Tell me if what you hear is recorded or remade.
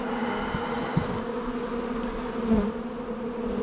recorded